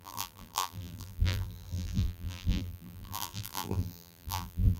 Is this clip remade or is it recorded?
remade